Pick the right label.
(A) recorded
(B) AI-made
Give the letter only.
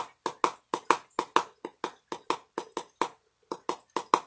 A